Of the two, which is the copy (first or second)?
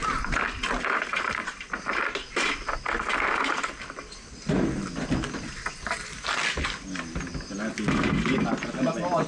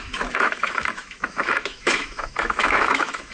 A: second